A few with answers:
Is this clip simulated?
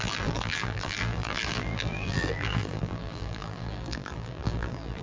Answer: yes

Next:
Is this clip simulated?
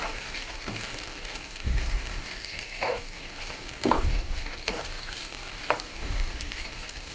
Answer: yes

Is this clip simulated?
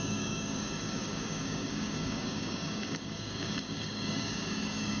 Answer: yes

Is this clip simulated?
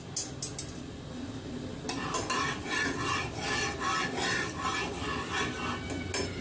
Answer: no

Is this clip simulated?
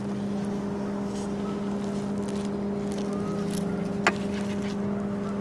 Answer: no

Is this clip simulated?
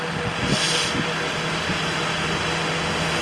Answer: no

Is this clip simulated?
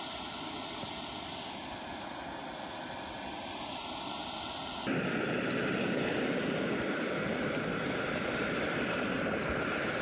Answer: no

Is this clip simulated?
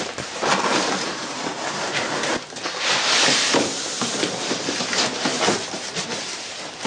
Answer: yes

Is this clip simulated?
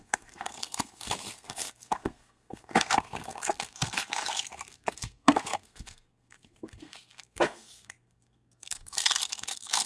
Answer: yes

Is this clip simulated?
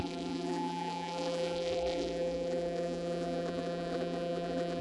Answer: yes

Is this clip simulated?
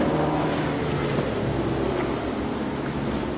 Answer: no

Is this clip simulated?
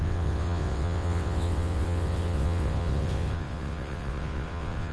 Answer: yes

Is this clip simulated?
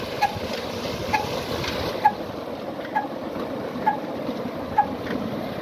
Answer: no